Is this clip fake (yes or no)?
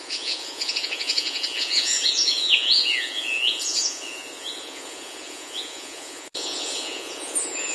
yes